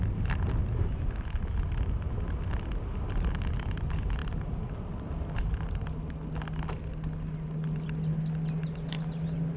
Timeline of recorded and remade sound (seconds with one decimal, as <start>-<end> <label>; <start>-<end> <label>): 0.0-9.6 recorded